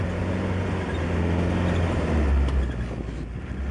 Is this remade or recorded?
recorded